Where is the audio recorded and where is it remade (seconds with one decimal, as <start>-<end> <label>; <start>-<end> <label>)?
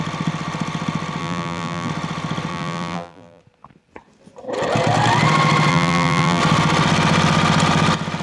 0.0-1.2 recorded; 1.2-1.9 remade; 1.9-2.5 recorded; 2.5-3.4 remade; 3.4-5.7 recorded; 5.7-6.4 remade; 6.4-8.2 recorded